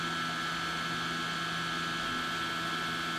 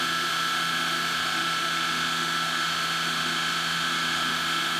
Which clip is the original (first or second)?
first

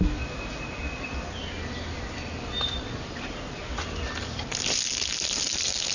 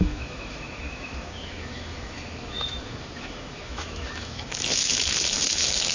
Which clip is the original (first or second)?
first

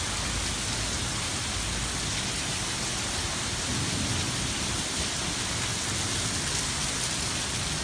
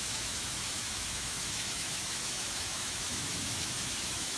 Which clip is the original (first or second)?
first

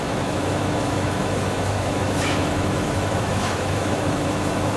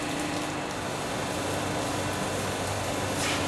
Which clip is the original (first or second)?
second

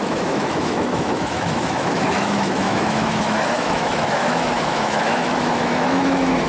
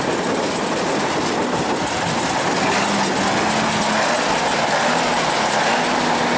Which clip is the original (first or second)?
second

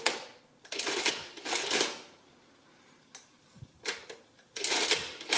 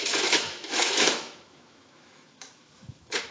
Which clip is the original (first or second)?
first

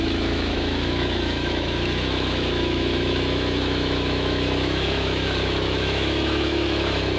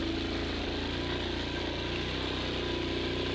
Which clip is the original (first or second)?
second